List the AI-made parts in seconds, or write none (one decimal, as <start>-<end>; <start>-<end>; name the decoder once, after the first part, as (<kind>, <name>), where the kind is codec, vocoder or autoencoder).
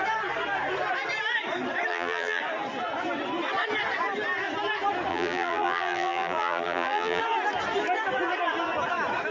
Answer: 1.9-2.4 (vocoder, BigVGAN v2); 5.1-7.2